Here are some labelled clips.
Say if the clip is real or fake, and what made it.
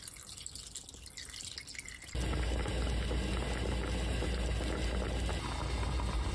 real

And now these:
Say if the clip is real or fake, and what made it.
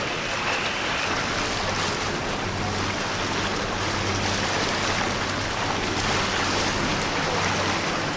real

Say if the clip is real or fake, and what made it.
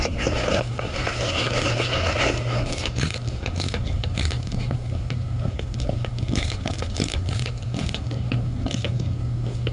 fake, codec, SNAC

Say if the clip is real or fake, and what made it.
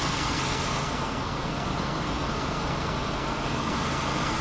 fake, codec, SNAC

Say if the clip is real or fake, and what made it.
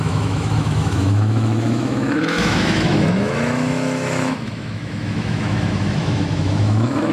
fake, autoencoder, DAC-VAE